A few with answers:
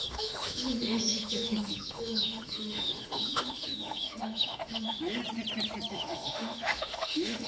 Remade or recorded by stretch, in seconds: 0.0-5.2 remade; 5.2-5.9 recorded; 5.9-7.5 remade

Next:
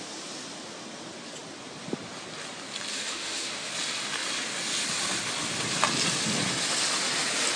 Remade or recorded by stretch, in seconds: 0.0-2.9 recorded; 2.9-3.7 remade; 3.7-7.6 recorded

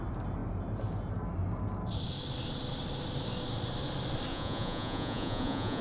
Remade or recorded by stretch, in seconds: 0.0-4.3 recorded; 4.3-5.8 remade

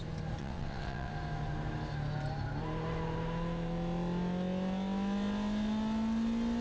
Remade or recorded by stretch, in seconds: 0.0-0.4 recorded; 0.4-1.1 remade; 1.1-6.6 recorded

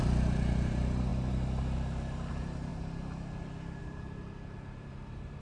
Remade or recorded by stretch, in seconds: 0.0-2.7 remade; 2.7-3.8 recorded; 3.8-5.4 remade

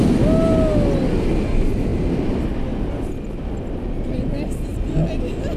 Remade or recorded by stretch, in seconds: 0.0-5.6 recorded

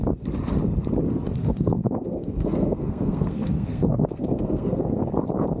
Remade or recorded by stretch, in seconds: 0.0-1.4 recorded; 1.4-4.8 remade; 4.8-5.6 recorded

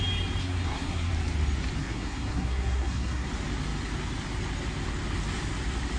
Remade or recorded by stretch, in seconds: 0.0-0.4 recorded; 0.4-1.1 remade; 1.1-1.8 recorded; 1.8-3.3 remade; 3.3-6.0 recorded